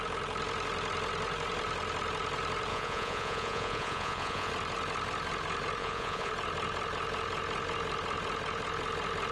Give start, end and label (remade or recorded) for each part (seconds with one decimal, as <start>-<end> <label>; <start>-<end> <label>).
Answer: 0.0-2.7 recorded; 2.7-4.5 remade; 4.5-5.8 recorded; 5.8-6.3 remade; 6.3-9.3 recorded